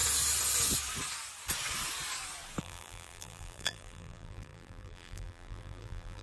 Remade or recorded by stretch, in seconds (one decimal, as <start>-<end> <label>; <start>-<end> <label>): 0.0-2.6 recorded; 2.6-6.2 remade